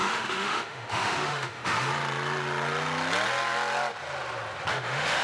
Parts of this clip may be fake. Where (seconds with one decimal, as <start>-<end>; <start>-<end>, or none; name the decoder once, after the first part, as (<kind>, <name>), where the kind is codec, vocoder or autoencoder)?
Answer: 0.0-1.9 (autoencoder, DAC-VAE); 4.7-5.2